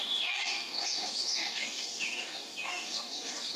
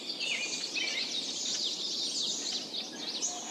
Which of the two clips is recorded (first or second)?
second